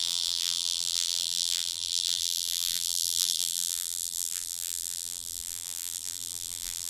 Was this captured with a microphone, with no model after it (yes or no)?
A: no